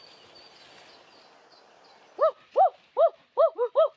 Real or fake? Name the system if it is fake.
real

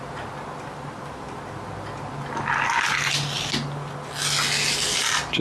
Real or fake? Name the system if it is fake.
real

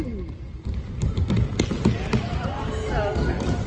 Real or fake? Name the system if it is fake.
real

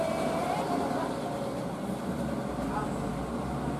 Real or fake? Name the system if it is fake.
real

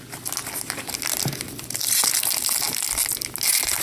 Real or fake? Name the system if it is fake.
real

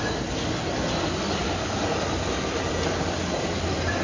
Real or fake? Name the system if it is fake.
real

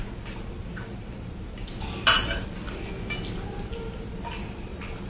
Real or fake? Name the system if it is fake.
real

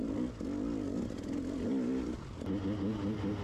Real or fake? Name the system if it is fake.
real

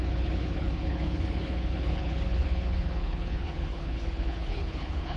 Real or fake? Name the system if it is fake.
fake, codec, HILCodec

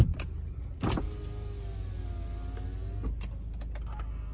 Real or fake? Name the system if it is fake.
real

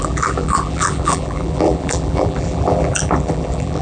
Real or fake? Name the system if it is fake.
fake, vocoder, BigVGAN v2